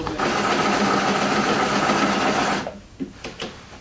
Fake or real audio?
real